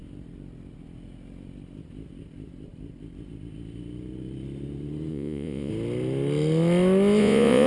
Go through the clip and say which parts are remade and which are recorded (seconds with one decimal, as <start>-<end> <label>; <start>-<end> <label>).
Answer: 0.0-5.1 recorded; 5.1-5.7 remade; 5.7-7.2 recorded; 7.2-7.7 remade